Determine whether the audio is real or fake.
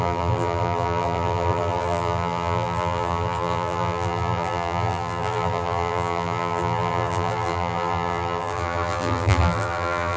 fake